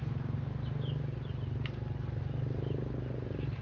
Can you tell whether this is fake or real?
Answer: real